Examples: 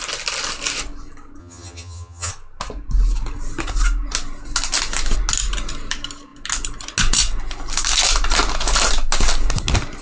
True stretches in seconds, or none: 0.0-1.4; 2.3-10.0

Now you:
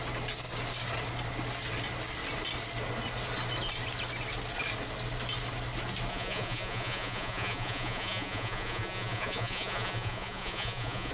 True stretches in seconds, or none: 0.0-6.1

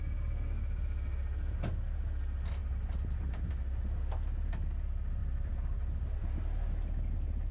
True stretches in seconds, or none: 0.0-2.6; 3.5-5.2; 6.3-7.5

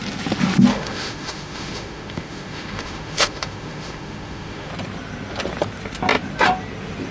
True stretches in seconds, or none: 0.0-0.7; 4.7-7.1

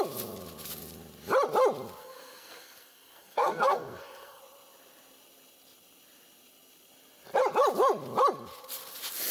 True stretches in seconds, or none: 0.0-2.0; 4.4-9.3

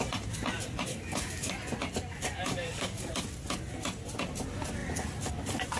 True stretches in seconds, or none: 0.0-0.9; 1.5-2.1; 3.1-5.8